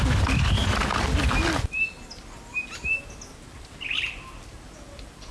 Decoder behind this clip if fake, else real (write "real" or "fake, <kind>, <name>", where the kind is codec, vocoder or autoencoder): real